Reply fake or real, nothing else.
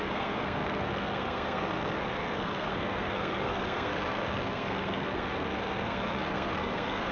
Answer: fake